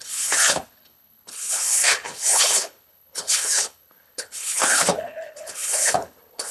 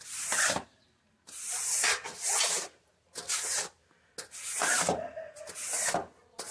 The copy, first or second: first